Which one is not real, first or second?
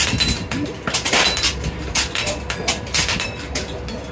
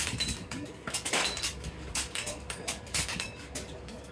second